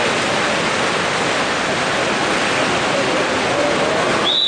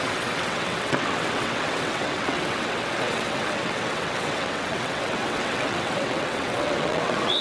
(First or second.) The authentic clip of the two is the first